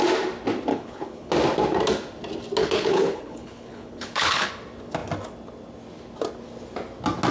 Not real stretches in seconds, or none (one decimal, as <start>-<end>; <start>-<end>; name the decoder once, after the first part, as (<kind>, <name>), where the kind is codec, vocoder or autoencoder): 0.7-1.3 (codec, HILCodec); 2.6-4.5